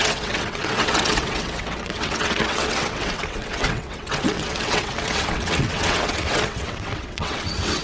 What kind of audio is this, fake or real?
fake